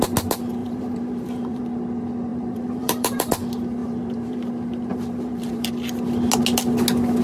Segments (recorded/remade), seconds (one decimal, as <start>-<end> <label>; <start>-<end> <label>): 0.0-0.6 recorded; 0.6-1.6 remade; 1.6-2.3 recorded; 2.3-3.3 remade; 3.3-3.8 recorded; 3.8-4.5 remade; 4.5-4.9 recorded; 4.9-5.7 remade; 5.7-7.2 recorded